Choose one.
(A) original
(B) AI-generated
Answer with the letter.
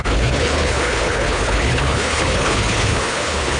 B